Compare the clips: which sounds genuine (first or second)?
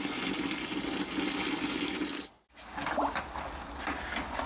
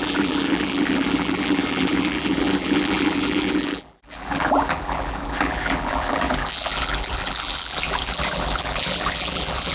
first